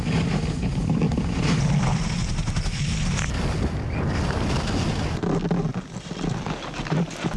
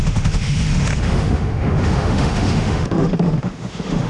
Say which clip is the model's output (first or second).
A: second